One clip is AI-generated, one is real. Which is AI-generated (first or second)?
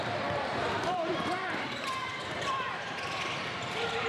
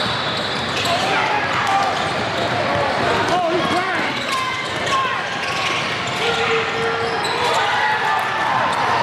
first